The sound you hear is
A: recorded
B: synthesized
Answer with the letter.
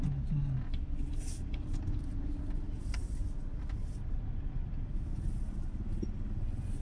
A